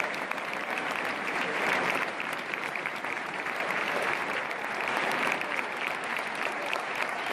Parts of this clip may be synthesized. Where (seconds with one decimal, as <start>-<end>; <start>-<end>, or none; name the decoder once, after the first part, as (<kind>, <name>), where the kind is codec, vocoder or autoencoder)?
0.0-7.3 (vocoder, BigVGAN v2)